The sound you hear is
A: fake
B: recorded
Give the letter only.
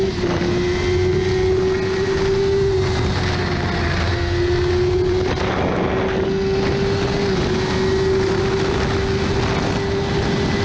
B